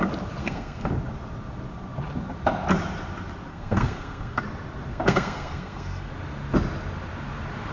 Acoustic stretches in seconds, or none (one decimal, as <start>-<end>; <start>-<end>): 0.0-0.4; 0.9-3.5; 4.4-4.9; 6.1-7.7